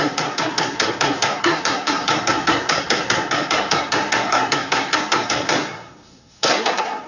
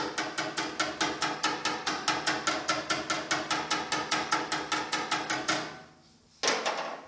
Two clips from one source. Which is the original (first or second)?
second